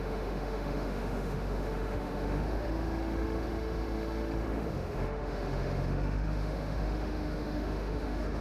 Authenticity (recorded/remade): remade